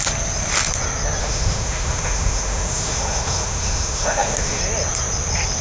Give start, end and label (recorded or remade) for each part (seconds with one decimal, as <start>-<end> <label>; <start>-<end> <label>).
0.0-1.2 recorded; 1.2-4.6 remade; 4.6-5.6 recorded